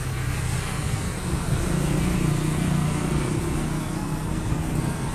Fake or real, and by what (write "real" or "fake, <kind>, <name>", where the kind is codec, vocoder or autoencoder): fake, codec, SNAC